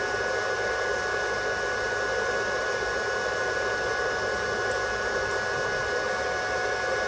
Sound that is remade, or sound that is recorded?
recorded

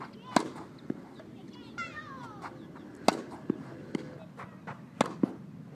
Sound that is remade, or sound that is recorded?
recorded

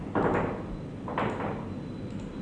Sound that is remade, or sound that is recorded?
recorded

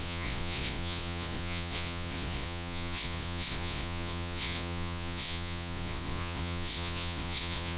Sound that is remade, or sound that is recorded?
remade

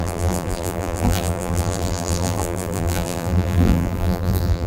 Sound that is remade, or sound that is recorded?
remade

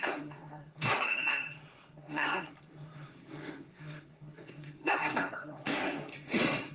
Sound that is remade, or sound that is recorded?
remade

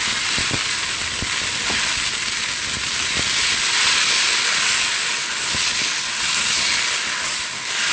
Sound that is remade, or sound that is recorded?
recorded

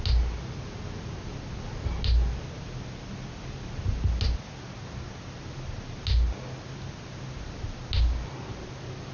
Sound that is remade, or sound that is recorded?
recorded